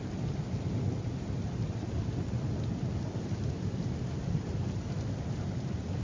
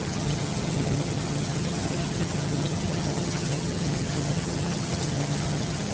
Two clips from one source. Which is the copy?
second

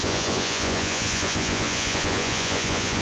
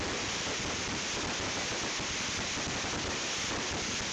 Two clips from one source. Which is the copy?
first